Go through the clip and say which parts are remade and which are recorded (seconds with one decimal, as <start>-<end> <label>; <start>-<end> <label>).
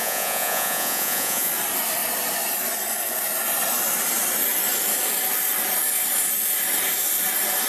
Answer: 0.0-1.5 remade; 1.5-7.7 recorded